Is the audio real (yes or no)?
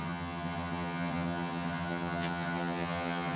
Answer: no